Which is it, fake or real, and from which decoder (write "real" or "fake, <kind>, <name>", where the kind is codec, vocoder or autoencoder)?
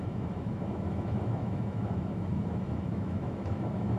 fake, autoencoder, DAC-VAE